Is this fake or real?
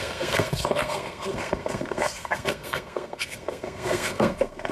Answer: fake